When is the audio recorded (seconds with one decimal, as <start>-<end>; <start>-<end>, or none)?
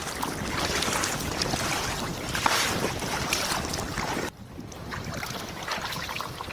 0.0-6.5